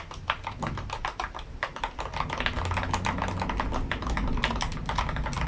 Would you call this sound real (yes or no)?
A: yes